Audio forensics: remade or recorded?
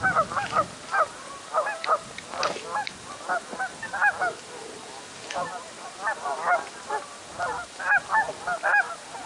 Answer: recorded